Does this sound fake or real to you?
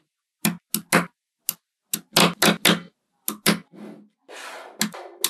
real